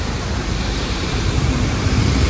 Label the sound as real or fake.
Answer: fake